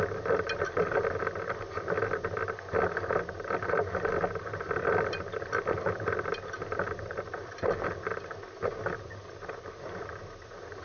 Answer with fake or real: real